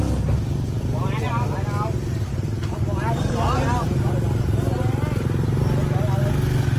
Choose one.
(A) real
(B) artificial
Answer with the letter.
A